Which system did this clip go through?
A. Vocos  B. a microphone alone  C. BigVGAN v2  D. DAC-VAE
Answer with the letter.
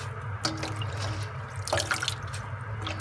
B